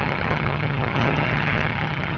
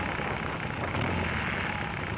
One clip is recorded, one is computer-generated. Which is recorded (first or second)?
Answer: second